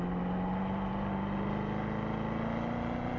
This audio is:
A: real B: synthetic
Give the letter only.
A